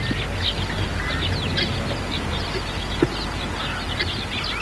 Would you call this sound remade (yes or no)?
no